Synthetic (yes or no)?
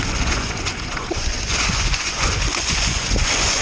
yes